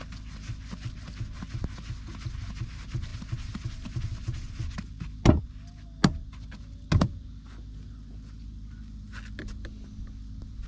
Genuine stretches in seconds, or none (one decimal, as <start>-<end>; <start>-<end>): 0.0-10.7